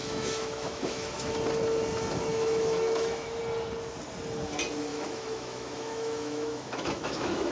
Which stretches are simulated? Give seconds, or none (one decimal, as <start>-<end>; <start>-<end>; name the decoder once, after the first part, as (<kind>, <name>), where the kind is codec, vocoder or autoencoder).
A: 0.0-1.3 (autoencoder, DAC-VAE); 2.3-3.4; 4.9-7.5